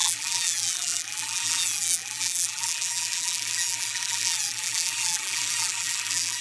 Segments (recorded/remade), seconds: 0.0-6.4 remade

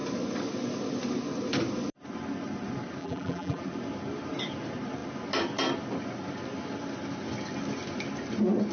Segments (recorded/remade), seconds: 0.0-3.0 recorded; 3.0-3.6 remade; 3.6-8.7 recorded

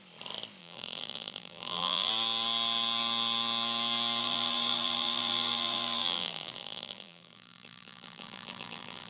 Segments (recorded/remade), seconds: 0.0-0.6 recorded; 0.6-2.1 remade; 2.1-4.2 recorded; 4.2-9.1 remade

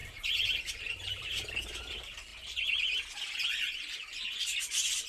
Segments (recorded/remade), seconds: 0.0-1.3 remade; 1.3-1.9 recorded; 1.9-2.3 remade; 2.3-5.1 recorded